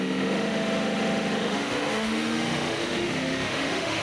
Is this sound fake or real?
fake